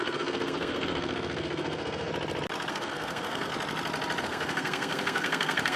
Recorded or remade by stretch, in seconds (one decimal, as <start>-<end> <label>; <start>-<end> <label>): 0.0-2.1 remade; 2.1-2.7 recorded; 2.7-3.5 remade; 3.5-4.2 recorded; 4.2-5.8 remade